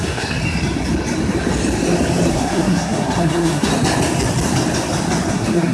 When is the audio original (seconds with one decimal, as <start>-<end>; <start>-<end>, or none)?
0.4-2.3; 3.7-5.3